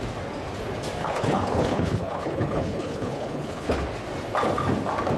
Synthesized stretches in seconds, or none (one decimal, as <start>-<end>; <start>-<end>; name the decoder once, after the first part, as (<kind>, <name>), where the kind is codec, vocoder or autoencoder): 1.0-3.8 (codec, HILCodec)